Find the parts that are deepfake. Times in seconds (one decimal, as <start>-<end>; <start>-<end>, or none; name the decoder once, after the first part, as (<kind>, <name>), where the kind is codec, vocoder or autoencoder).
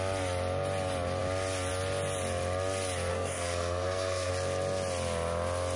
3.1-4.3 (codec, SNAC)